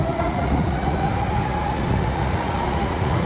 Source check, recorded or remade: remade